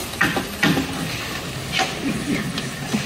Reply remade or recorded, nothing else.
recorded